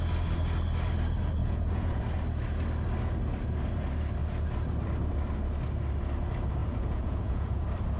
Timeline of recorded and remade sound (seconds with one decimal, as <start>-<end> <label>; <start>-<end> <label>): 0.0-1.4 recorded; 1.4-2.0 remade; 2.0-6.6 recorded; 6.6-7.6 remade; 7.6-8.0 recorded